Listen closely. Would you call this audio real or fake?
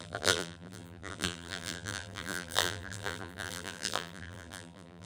fake